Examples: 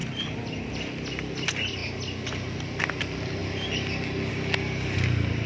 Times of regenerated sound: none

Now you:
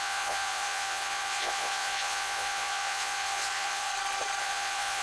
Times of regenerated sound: 0.0-3.9 (vocoder, Vocos); 4.4-5.0

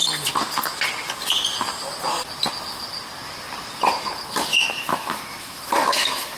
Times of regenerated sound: 4.5-6.4 (autoencoder, DAC-VAE)